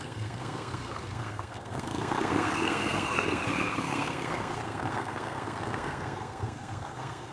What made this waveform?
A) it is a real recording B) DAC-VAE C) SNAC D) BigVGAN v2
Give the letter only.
C